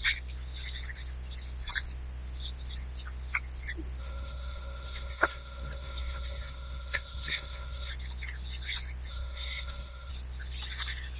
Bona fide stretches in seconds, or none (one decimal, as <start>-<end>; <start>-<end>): 0.0-4.0; 7.9-9.1; 10.1-11.2